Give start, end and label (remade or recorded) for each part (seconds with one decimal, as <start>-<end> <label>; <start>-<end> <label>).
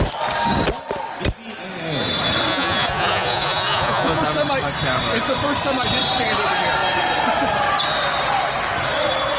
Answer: 0.0-2.5 recorded; 2.5-4.2 remade; 4.2-9.4 recorded